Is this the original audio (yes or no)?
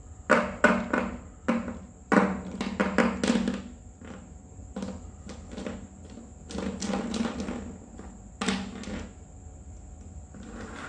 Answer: yes